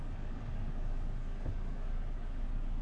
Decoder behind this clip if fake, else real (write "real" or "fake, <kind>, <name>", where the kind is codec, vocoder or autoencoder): fake, codec, DAC